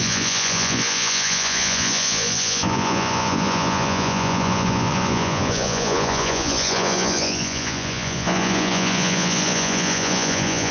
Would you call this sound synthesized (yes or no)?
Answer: yes